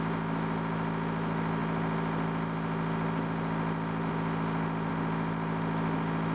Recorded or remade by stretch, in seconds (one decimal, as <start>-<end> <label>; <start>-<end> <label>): 0.0-6.3 recorded